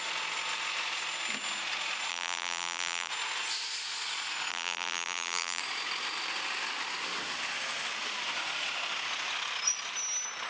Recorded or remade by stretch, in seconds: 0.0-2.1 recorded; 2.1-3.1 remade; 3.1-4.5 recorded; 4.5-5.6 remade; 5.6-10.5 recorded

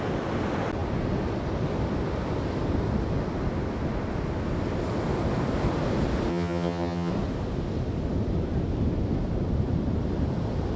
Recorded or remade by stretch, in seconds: 0.0-6.3 recorded; 6.3-7.1 remade; 7.1-10.8 recorded